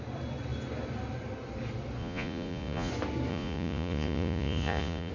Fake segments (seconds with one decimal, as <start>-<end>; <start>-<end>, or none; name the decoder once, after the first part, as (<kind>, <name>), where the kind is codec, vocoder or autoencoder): 2.0-2.9 (vocoder, Vocos); 3.3-5.1